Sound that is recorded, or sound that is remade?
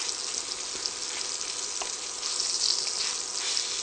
recorded